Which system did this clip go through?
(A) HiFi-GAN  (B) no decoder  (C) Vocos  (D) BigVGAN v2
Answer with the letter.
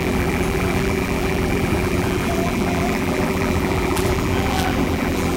D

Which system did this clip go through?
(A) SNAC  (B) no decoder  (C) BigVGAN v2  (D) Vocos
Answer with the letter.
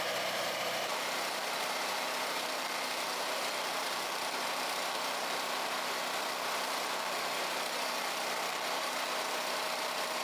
C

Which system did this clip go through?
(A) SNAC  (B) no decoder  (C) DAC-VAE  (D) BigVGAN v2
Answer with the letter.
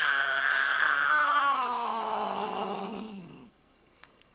A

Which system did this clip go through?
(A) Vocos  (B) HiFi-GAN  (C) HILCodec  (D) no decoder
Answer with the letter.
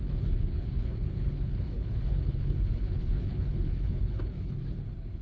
C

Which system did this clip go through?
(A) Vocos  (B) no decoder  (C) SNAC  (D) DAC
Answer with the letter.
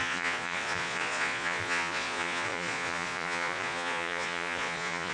A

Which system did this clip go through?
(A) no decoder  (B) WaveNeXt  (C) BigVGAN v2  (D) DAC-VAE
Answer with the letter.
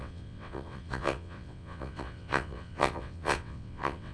B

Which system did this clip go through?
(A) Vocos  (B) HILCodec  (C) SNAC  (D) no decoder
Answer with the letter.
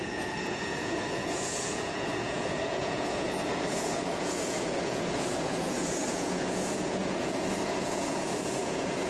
A